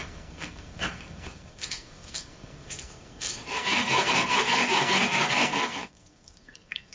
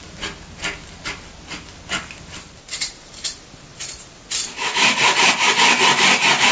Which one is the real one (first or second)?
second